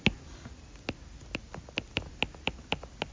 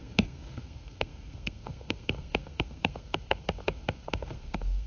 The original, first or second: first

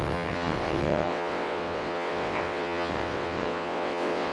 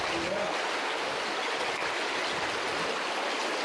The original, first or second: second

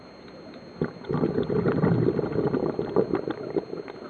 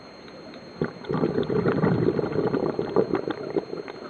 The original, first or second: first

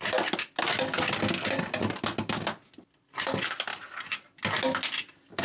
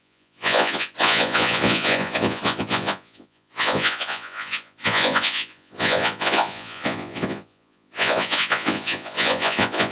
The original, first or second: first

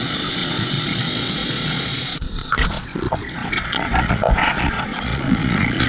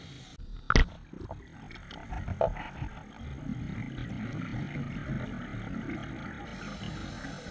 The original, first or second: second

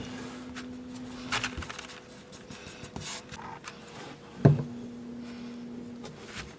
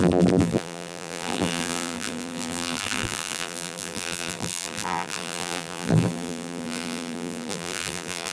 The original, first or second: first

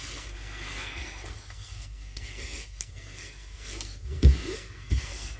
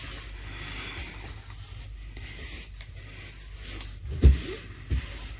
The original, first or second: second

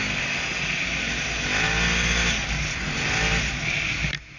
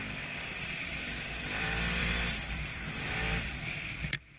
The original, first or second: first